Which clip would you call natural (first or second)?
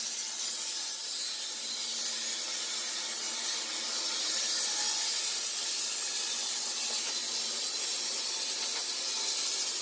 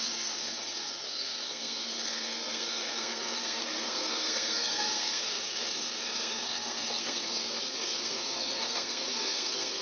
first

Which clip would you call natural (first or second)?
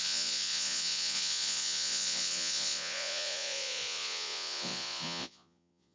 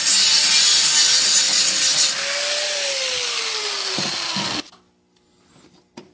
second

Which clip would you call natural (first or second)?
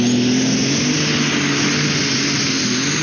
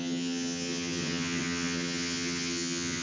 first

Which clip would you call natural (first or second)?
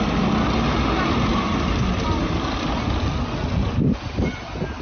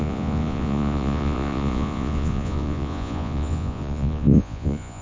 first